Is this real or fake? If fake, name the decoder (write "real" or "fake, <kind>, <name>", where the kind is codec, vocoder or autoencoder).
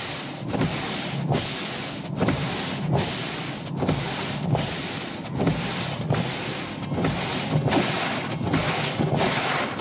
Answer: real